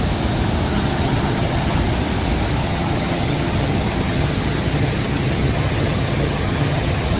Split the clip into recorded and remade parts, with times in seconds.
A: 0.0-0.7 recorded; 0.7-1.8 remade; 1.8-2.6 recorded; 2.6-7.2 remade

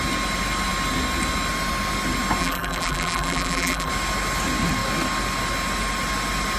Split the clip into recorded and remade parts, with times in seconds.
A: 0.0-2.4 recorded; 2.4-3.9 remade; 3.9-6.6 recorded

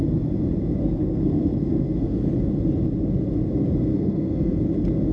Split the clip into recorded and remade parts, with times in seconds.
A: 0.0-0.8 recorded; 0.8-2.2 remade; 2.2-3.9 recorded; 3.9-4.6 remade; 4.6-5.1 recorded

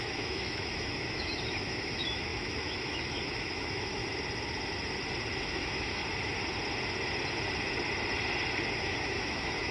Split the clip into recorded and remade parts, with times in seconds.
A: 0.0-4.0 remade; 4.0-5.4 recorded; 5.4-6.0 remade; 6.0-8.7 recorded; 8.7-9.7 remade

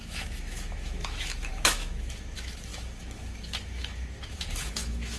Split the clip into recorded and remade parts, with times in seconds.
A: 0.0-5.2 remade

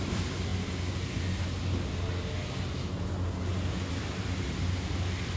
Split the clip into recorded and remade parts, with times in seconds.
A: 0.0-0.5 remade; 0.5-3.7 recorded; 3.7-5.4 remade

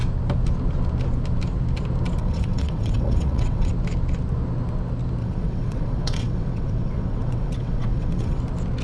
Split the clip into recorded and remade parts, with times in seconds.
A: 0.0-2.2 recorded; 2.2-3.7 remade; 3.7-5.2 recorded; 5.2-8.4 remade; 8.4-8.8 recorded